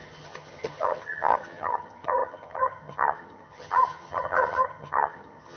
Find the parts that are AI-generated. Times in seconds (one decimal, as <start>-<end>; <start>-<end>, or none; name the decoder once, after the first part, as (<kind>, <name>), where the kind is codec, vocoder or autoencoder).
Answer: 0.0-5.6 (vocoder, HiFi-GAN)